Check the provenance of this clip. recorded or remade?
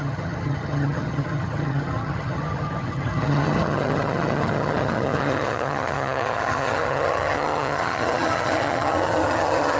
remade